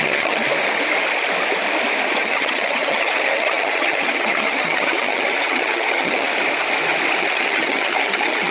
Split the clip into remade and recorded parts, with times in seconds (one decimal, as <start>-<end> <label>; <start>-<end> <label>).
0.0-0.4 remade; 0.4-2.1 recorded; 2.1-6.3 remade; 6.3-7.2 recorded; 7.2-8.5 remade